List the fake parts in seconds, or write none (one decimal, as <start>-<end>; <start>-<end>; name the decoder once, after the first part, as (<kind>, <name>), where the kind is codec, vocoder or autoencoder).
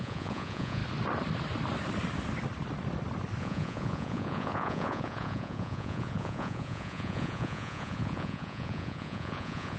0.0-0.8 (vocoder, Vocos); 3.4-9.8